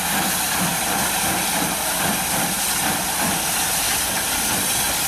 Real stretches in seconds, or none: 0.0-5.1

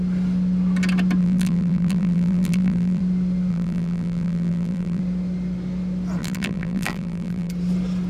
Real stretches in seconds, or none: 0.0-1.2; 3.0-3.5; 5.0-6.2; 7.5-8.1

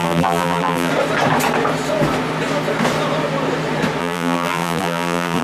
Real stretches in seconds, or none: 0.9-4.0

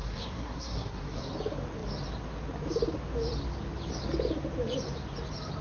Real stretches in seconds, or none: 1.2-5.6

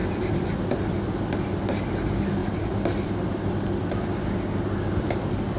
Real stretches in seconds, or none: 0.6-5.6